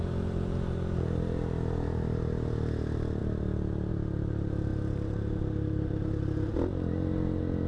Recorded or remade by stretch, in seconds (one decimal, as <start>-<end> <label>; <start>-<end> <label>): 0.0-7.7 recorded